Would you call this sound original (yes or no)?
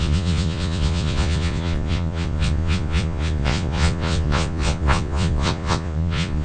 no